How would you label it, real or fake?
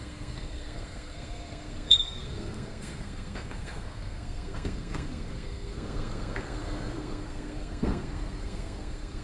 fake